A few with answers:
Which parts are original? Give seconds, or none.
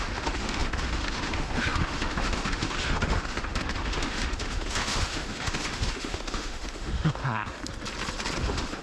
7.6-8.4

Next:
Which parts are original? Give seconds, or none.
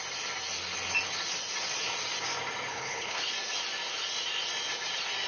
0.0-2.7; 3.2-5.3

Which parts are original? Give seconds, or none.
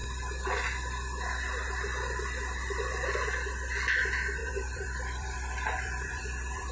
0.0-4.4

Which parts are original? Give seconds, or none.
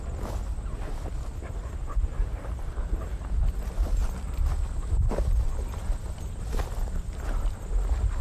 0.0-8.2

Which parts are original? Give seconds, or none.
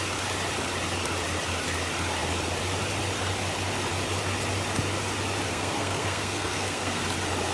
0.0-5.5; 7.0-7.5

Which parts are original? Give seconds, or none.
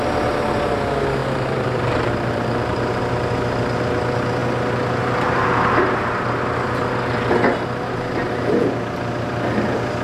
0.0-1.2; 3.0-10.0